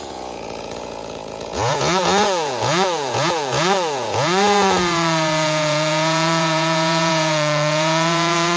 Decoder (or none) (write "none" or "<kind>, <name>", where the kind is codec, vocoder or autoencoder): vocoder, Vocos